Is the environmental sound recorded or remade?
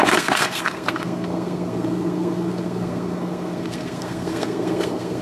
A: remade